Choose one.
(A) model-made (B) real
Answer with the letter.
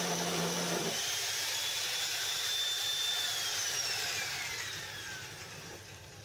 A